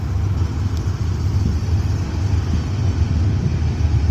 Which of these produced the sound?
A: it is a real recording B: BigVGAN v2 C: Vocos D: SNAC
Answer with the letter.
A